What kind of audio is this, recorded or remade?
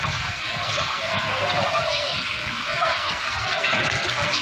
remade